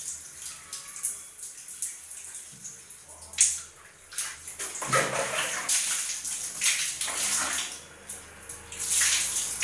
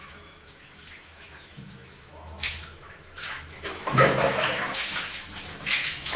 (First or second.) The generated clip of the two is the second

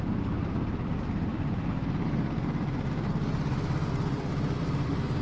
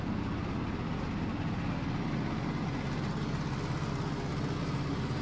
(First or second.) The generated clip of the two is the first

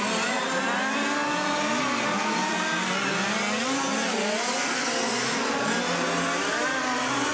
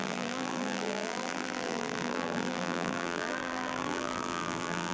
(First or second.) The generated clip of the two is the second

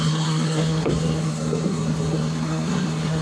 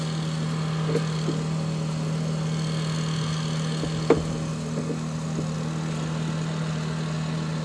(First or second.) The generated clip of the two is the first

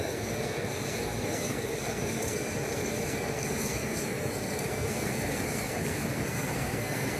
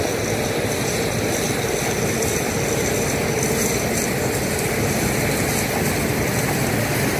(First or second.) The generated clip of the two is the first